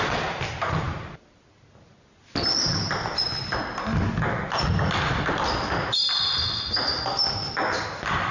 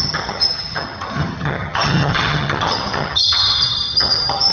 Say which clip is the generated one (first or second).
second